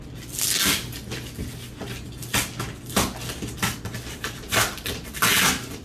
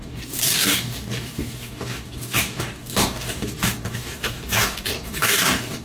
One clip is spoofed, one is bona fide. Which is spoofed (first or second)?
second